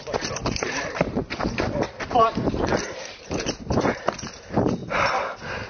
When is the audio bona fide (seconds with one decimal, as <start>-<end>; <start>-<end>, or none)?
1.2-2.1; 4.8-5.7

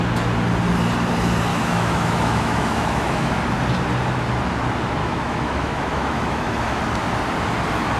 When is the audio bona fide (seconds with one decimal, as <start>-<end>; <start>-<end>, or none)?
0.0-1.5; 3.4-5.0; 6.8-8.0